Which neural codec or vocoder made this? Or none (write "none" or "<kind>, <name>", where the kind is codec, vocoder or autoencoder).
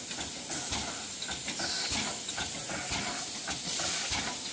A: none